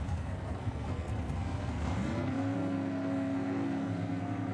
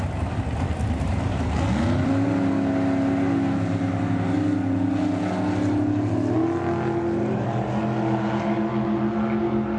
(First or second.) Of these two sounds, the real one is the second